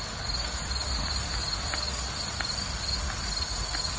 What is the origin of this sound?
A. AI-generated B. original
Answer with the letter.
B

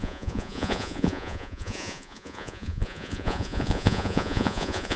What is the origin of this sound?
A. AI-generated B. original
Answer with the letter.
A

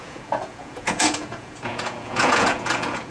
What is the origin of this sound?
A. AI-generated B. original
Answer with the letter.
A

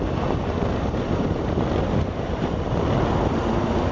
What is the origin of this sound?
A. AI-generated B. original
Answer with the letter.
B